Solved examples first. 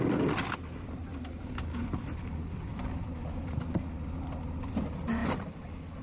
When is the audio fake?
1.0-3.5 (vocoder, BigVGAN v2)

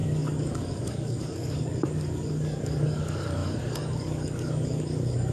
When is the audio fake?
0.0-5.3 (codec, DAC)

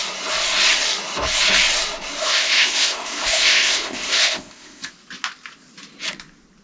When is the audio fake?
2.2-4.9 (codec, ZipCodec)

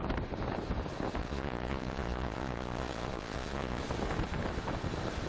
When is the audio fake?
1.2-3.8 (vocoder, Vocos)

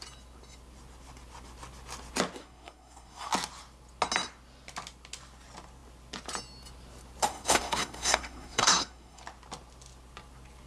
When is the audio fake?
2.4-3.3 (codec, SNAC); 7.3-9.2

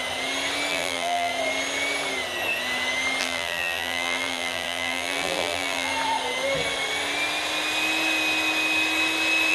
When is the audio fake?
0.7-1.3 (vocoder, BigVGAN v2); 3.2-5.9

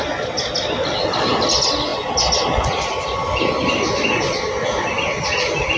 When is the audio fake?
none